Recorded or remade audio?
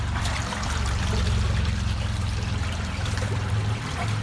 remade